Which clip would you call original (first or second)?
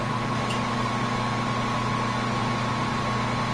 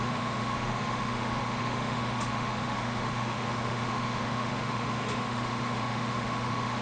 first